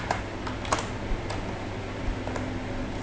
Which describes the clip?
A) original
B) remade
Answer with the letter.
A